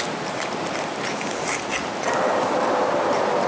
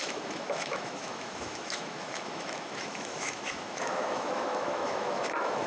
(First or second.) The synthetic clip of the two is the second